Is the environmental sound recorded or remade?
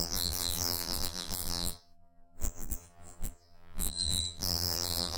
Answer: remade